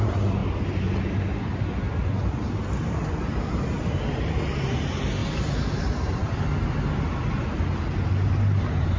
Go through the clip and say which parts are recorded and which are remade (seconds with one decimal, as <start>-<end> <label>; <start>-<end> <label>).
0.0-0.4 remade; 0.4-2.7 recorded; 2.7-5.2 remade; 5.2-5.8 recorded; 5.8-6.2 remade; 6.2-8.1 recorded; 8.1-9.0 remade

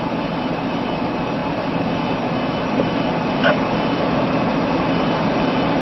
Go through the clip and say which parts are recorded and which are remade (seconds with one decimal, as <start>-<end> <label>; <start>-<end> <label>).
0.0-5.8 recorded

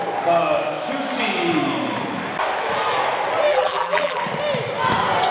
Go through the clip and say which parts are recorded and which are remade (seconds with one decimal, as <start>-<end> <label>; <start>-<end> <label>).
0.0-3.5 recorded; 3.5-4.2 remade; 4.2-5.3 recorded

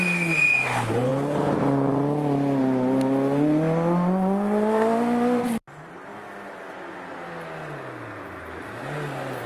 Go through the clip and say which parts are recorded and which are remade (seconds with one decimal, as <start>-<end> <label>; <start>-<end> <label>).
0.0-9.5 recorded

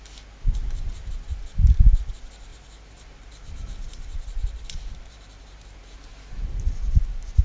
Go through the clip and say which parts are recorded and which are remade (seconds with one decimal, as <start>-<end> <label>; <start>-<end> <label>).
0.0-0.6 recorded; 0.6-1.1 remade; 1.1-2.5 recorded; 2.5-6.7 remade; 6.7-7.4 recorded

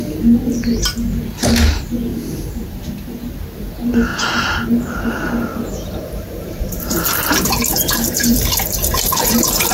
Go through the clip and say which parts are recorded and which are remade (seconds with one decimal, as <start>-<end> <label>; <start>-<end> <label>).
0.0-2.1 recorded; 2.1-2.8 remade; 2.8-5.5 recorded; 5.5-9.7 remade

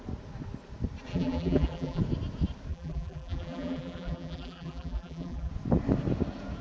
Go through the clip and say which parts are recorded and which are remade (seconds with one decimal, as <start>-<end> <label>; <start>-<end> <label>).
0.0-1.1 recorded; 1.1-2.0 remade; 2.0-2.7 recorded; 2.7-5.5 remade; 5.5-6.6 recorded